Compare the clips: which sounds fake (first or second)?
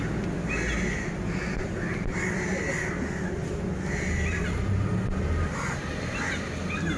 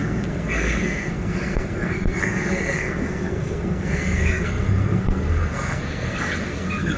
second